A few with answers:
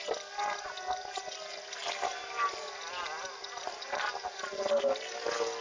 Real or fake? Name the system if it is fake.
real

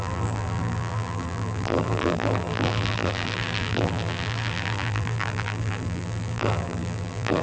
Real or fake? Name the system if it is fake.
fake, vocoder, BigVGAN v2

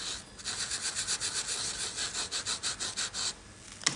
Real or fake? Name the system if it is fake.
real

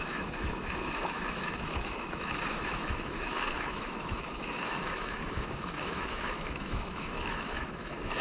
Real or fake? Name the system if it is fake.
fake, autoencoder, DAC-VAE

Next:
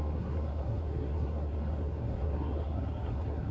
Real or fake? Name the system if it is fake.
fake, codec, SNAC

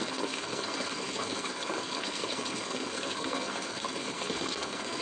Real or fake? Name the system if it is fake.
fake, codec, SNAC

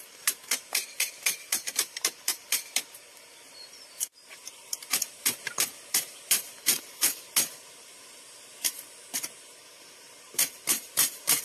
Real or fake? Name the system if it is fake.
fake, vocoder, BigVGAN v2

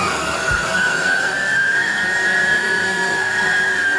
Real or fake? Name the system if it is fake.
fake, codec, SNAC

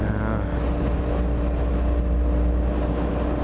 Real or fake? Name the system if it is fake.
real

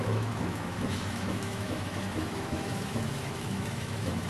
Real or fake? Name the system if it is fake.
fake, autoencoder, DAC-VAE